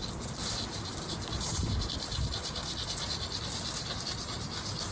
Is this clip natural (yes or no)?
yes